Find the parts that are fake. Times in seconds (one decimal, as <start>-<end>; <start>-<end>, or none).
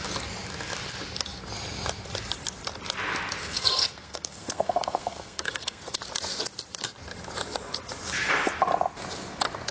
3.4-6.0